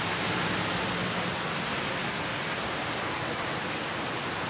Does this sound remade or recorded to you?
recorded